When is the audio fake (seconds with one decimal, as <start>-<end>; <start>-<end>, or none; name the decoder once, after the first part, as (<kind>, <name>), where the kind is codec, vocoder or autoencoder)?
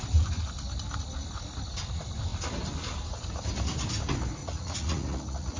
4.4-5.6 (vocoder, Vocos)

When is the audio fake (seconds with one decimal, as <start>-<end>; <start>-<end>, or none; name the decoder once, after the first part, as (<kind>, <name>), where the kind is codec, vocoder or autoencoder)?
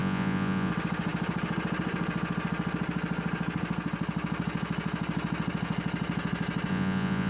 0.0-0.7 (vocoder, Vocos); 6.7-7.3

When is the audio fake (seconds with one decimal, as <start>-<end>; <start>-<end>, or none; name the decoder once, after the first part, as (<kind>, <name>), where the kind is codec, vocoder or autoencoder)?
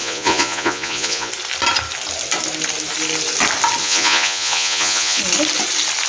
0.0-1.3 (vocoder, Vocos); 3.8-5.2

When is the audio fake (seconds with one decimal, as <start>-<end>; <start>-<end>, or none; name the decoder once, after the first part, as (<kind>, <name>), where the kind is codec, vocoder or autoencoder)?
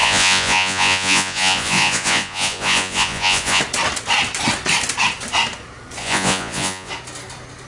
0.0-3.6 (vocoder, Vocos); 6.0-6.9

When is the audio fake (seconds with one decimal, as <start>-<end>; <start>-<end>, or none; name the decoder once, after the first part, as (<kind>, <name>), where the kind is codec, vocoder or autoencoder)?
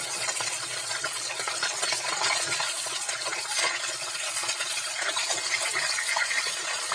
0.0-5.3 (vocoder, Vocos); 6.1-6.9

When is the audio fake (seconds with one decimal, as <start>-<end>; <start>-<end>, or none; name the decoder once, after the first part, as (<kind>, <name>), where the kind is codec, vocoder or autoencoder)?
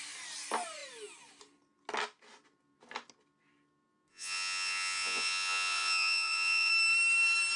4.1-6.7 (vocoder, Vocos)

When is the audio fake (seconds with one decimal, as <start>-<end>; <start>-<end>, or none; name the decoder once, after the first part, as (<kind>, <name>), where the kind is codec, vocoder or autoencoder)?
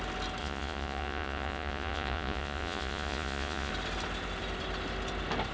0.4-3.7 (vocoder, Vocos)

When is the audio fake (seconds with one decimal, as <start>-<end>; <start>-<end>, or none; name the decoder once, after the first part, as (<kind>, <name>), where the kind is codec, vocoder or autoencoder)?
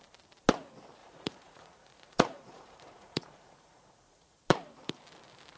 1.0-4.4 (vocoder, Vocos)